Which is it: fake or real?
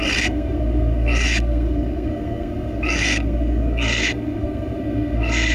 fake